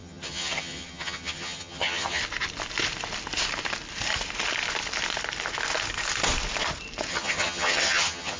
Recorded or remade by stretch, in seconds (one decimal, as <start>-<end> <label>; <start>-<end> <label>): 0.0-2.2 remade; 2.2-7.1 recorded; 7.1-8.4 remade